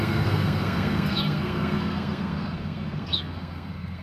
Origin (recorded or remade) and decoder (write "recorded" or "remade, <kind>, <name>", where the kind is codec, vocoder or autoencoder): remade, codec, SNAC